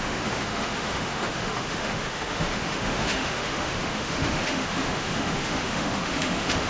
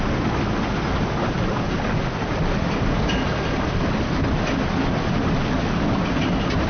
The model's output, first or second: first